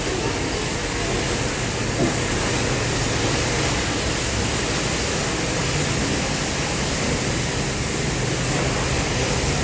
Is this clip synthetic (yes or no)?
no